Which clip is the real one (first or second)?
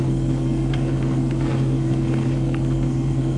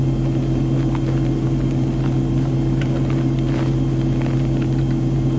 second